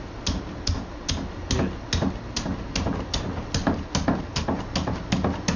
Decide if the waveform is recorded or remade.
recorded